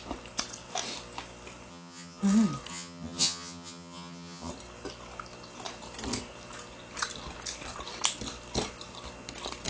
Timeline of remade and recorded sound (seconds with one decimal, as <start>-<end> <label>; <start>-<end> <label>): 0.0-1.7 recorded; 1.7-2.2 remade; 2.2-2.7 recorded; 2.7-4.5 remade; 4.5-9.7 recorded